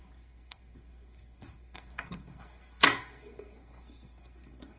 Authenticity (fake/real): fake